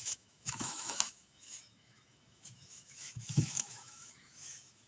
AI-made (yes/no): yes